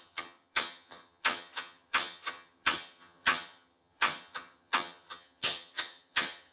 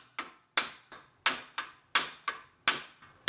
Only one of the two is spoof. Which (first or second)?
first